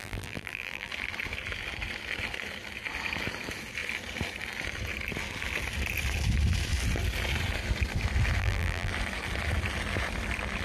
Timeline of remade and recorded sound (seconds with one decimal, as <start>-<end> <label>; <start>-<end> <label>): 0.0-0.9 remade; 0.9-8.4 recorded; 8.4-8.9 remade; 8.9-10.6 recorded